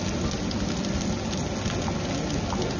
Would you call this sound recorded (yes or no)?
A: yes